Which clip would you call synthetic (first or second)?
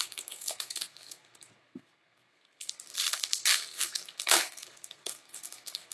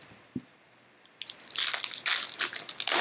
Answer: first